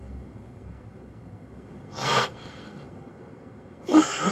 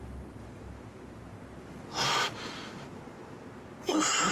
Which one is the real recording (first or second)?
second